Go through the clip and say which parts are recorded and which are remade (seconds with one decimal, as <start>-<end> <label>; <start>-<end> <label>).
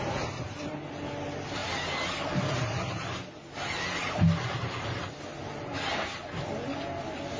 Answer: 0.0-7.4 recorded